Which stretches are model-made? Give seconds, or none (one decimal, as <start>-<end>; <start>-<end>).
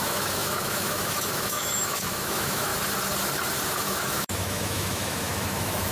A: 0.0-2.7; 3.8-5.9